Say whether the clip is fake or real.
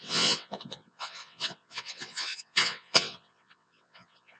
fake